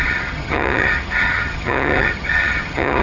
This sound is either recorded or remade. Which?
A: remade